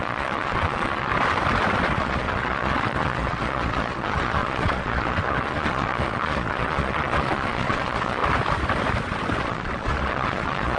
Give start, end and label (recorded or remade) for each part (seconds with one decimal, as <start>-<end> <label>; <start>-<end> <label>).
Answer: 0.0-1.1 remade; 1.1-1.9 recorded; 1.9-8.2 remade; 8.2-9.4 recorded; 9.4-10.8 remade